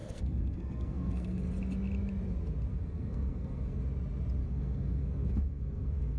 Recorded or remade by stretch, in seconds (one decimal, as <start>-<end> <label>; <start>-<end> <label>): 0.0-1.5 remade; 1.5-2.7 recorded; 2.7-3.8 remade; 3.8-4.4 recorded; 4.4-6.2 remade